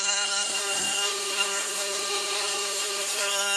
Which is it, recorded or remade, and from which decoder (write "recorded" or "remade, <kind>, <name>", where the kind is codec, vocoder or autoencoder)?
remade, codec, SNAC